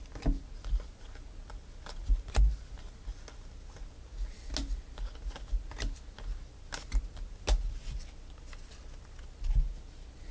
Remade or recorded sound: recorded